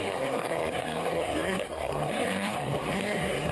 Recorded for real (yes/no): no